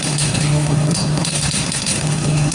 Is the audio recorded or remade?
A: remade